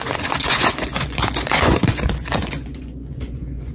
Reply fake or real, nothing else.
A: fake